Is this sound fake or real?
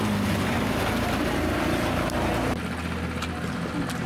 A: real